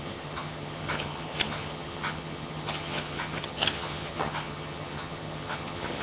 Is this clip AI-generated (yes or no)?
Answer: yes